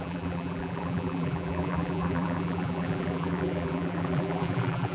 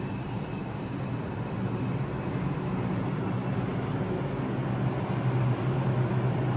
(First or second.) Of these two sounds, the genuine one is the second